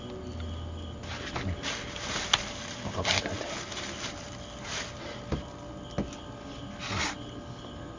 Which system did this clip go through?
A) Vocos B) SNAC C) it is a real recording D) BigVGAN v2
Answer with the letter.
C